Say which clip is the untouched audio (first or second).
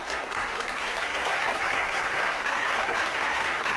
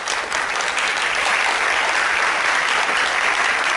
second